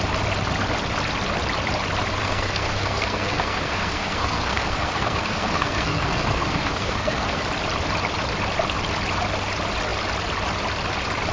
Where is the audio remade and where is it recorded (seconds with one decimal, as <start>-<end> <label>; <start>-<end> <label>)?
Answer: 0.0-2.2 recorded; 2.2-7.4 remade; 7.4-11.3 recorded

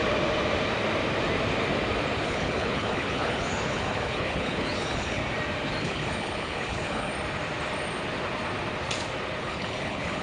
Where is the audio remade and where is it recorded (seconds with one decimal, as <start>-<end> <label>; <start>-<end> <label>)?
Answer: 0.0-2.2 recorded; 2.2-5.2 remade; 5.2-5.8 recorded; 5.8-7.1 remade; 7.1-9.4 recorded; 9.4-10.2 remade

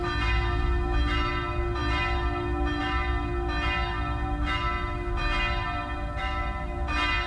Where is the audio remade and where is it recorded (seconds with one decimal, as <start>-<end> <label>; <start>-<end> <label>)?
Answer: 0.0-7.3 recorded

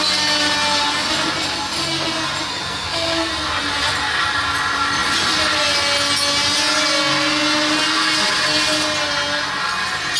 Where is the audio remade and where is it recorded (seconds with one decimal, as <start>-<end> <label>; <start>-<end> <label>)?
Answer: 0.0-2.5 recorded; 2.5-3.3 remade; 3.3-10.2 recorded

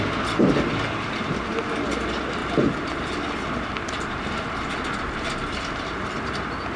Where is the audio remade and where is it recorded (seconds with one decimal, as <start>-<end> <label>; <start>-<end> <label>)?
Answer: 0.0-2.4 recorded; 2.4-6.3 remade; 6.3-6.8 recorded

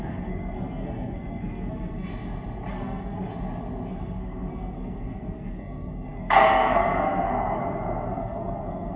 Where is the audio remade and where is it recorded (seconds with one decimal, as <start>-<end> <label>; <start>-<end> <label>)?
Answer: 0.0-2.1 remade; 2.1-2.7 recorded; 2.7-3.3 remade; 3.3-3.9 recorded; 3.9-9.0 remade

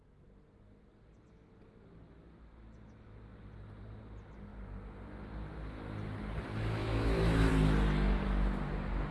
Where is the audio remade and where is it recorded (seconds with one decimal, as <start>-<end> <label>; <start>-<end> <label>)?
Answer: 0.0-6.8 recorded; 6.8-7.5 remade; 7.5-9.1 recorded

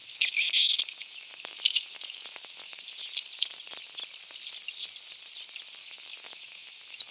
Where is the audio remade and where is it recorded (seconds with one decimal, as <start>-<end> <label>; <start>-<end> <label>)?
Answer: 0.0-2.8 remade; 2.8-5.8 recorded; 5.8-7.1 remade